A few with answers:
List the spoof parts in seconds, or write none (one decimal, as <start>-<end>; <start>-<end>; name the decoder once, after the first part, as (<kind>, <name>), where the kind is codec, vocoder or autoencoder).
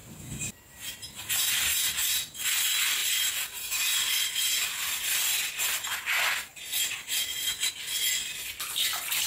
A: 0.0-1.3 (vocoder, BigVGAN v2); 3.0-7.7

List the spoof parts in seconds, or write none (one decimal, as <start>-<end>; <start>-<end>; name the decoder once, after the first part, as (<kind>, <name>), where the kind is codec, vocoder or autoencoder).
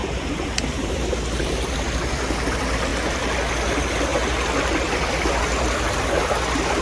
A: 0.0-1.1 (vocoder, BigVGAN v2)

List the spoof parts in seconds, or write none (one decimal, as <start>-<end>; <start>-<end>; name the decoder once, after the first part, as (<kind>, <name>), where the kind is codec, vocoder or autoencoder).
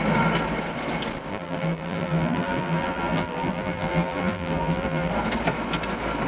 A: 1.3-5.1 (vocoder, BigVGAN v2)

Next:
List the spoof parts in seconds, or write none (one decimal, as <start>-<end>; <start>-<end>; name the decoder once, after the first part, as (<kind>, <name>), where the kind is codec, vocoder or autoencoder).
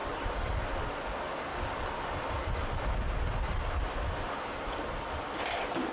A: 0.0-0.5 (vocoder, BigVGAN v2); 1.5-4.9